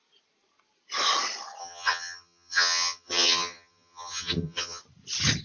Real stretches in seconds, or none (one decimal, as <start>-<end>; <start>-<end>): 0.0-1.6; 4.8-5.4